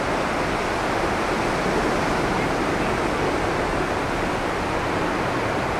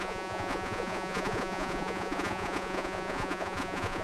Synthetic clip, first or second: second